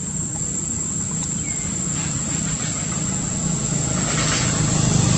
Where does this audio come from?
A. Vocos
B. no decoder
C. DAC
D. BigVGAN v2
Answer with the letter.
B